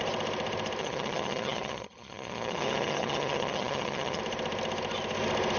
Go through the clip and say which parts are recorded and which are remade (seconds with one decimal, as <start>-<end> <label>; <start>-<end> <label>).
0.0-0.8 recorded; 0.8-4.2 remade; 4.2-5.6 recorded